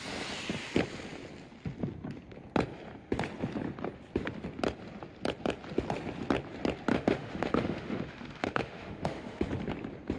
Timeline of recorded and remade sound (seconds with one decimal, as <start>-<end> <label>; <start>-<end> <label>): 0.0-6.9 recorded; 6.9-9.4 remade; 9.4-10.2 recorded